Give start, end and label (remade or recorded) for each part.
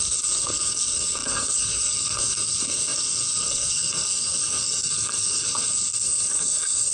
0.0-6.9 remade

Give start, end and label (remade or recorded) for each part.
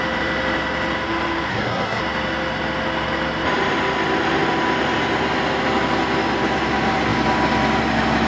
0.0-1.5 recorded; 1.5-2.0 remade; 2.0-8.3 recorded